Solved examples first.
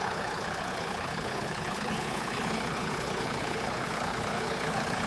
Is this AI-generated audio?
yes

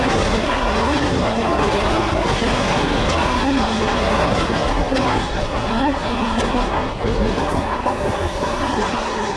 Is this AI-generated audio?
yes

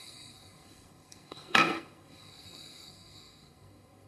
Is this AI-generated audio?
yes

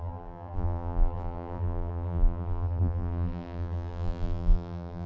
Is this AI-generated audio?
yes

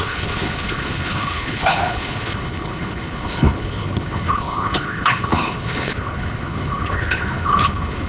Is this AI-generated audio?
yes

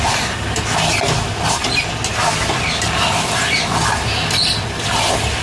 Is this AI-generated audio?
no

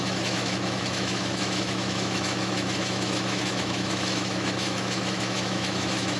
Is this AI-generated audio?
yes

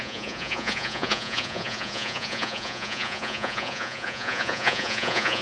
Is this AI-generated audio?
yes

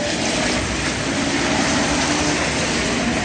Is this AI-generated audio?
no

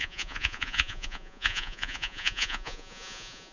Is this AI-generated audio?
yes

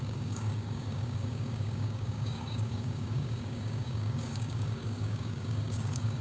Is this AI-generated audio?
yes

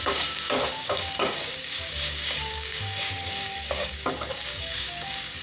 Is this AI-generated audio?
yes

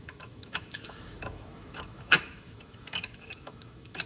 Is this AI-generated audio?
yes